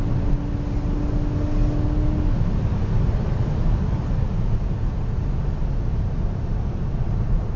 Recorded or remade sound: recorded